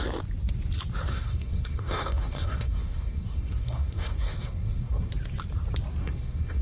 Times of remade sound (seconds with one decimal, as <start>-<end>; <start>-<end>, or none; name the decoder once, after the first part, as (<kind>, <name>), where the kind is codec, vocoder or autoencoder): 1.1-5.1 (codec, SNAC); 6.0-6.6